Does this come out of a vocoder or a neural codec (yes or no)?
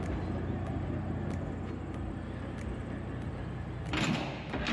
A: no